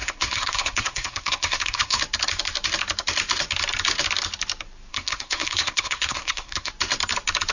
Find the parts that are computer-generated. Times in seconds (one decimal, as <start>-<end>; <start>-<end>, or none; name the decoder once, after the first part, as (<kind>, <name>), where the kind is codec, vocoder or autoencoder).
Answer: 0.0-2.0 (codec, SNAC); 4.9-6.7